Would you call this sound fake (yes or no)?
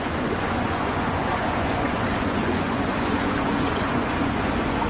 yes